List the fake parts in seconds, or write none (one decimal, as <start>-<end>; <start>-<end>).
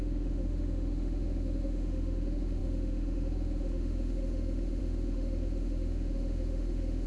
0.0-7.1